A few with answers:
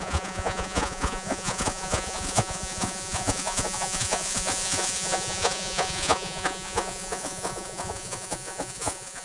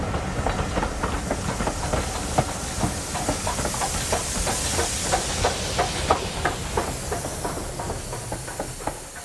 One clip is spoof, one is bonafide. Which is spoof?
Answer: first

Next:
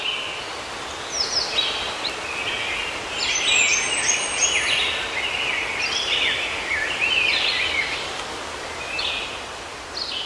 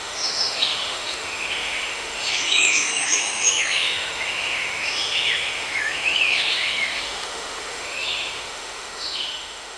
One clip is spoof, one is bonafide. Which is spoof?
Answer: second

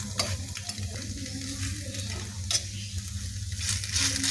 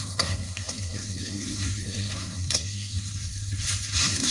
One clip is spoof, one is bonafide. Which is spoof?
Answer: second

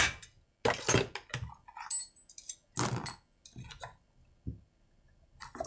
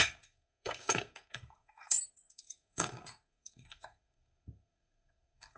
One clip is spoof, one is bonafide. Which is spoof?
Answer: second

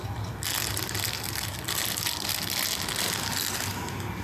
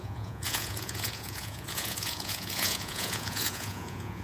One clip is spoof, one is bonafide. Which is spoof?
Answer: second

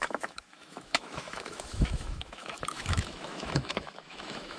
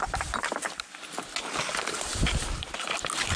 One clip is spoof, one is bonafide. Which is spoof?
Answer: first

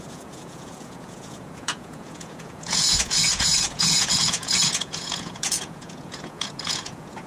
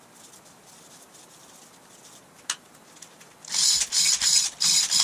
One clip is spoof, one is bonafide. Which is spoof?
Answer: first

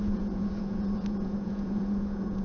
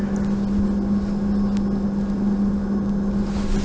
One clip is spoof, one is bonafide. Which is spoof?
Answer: first